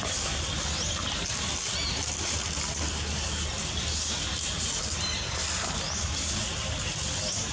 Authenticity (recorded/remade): recorded